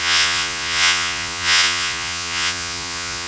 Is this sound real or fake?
fake